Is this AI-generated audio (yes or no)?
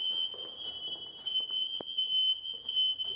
no